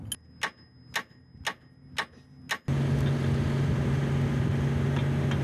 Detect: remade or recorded recorded